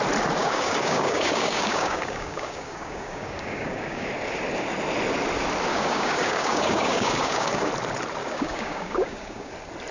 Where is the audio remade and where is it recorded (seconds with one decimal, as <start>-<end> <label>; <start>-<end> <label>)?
0.0-0.4 recorded; 0.4-4.1 remade; 4.1-5.7 recorded; 5.7-7.7 remade; 7.7-8.2 recorded; 8.2-9.5 remade; 9.5-9.9 recorded